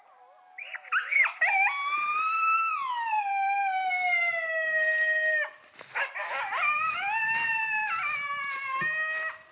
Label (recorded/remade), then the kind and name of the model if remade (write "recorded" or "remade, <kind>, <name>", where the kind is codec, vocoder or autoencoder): recorded